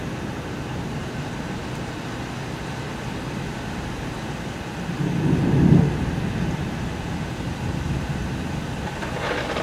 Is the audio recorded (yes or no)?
yes